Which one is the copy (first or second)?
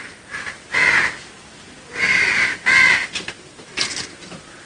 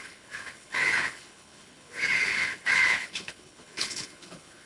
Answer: second